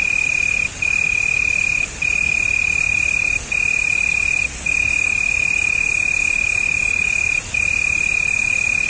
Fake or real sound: real